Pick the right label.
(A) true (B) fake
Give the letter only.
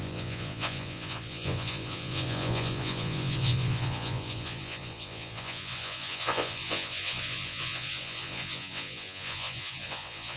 B